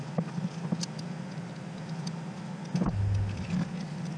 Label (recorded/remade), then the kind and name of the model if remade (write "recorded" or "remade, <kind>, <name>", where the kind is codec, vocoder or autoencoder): recorded